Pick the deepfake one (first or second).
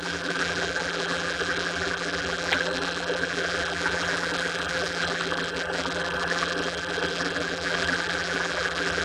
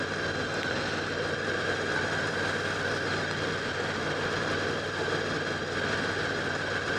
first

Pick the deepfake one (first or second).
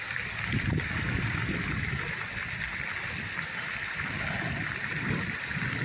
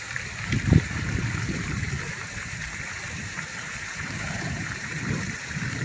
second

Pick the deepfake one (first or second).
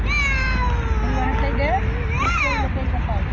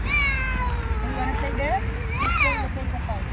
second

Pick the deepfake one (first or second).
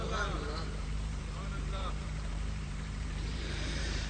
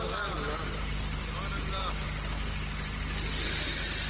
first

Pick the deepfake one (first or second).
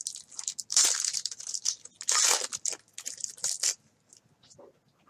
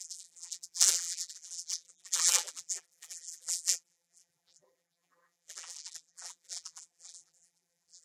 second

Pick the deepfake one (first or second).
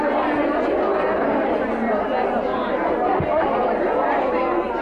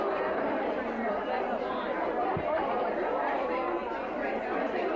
second